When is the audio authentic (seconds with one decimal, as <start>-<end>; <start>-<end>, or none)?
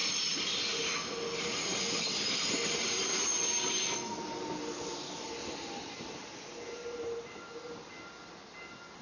0.0-9.0